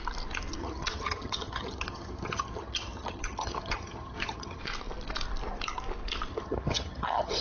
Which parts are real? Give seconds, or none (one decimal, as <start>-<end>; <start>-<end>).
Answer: 0.0-0.6; 4.6-6.3